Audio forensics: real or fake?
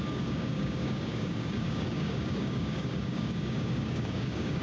fake